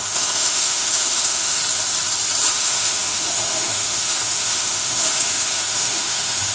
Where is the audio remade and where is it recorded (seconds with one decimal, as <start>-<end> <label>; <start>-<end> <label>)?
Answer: 0.0-1.6 remade; 1.6-2.5 recorded; 2.5-6.5 remade